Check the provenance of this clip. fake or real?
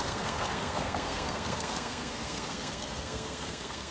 fake